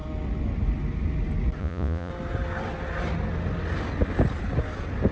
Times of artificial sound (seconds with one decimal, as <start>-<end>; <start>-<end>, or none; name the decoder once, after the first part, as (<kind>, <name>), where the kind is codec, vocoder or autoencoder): 1.6-2.1 (vocoder, Vocos)

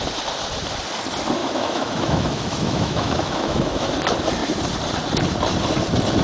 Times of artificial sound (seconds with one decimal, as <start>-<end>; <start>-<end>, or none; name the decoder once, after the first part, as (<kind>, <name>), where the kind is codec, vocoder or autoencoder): 1.4-3.9 (autoencoder, DAC-VAE)

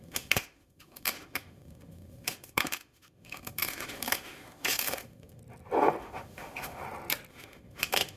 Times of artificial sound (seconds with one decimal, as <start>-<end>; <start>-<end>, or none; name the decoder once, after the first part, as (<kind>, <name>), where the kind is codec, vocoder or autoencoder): 0.0-5.4 (autoencoder, DAC-VAE); 6.0-6.8; 7.3-8.2